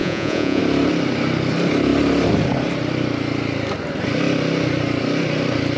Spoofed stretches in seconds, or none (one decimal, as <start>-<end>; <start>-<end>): 0.0-0.6